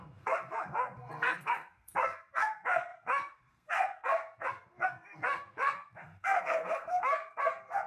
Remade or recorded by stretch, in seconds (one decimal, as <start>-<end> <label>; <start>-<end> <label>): 0.0-7.9 remade